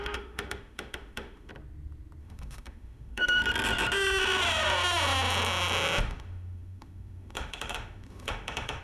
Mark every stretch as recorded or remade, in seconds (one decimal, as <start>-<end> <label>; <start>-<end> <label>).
0.0-1.5 remade; 1.5-2.2 recorded; 2.2-3.4 remade; 3.4-6.0 recorded; 6.0-8.8 remade